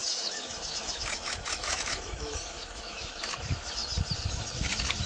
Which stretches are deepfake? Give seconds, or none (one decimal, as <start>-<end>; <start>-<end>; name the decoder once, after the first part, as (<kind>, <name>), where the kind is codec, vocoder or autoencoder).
0.0-3.8 (autoencoder, DAC-VAE); 4.3-5.1